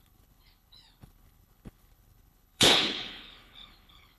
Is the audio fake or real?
fake